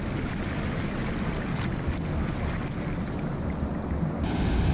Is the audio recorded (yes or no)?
yes